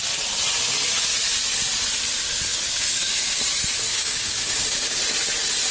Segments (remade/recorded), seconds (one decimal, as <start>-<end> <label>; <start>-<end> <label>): 0.0-2.5 recorded; 2.5-3.4 remade; 3.4-3.9 recorded; 3.9-5.0 remade; 5.0-5.7 recorded